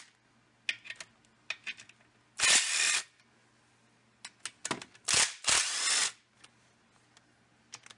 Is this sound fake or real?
real